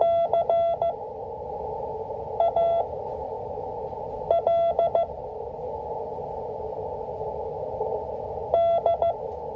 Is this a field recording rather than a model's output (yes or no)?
yes